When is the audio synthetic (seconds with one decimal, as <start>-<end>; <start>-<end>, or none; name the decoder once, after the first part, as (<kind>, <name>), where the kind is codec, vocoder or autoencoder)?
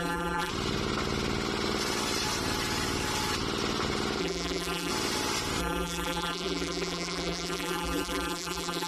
0.0-0.5 (vocoder, BigVGAN v2); 4.2-4.9; 5.6-8.9